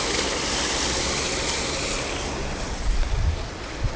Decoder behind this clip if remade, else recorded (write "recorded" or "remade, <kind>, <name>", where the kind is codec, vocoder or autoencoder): recorded